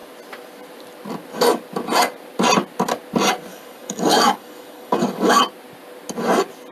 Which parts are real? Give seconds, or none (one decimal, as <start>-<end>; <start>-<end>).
0.0-3.5; 5.4-6.7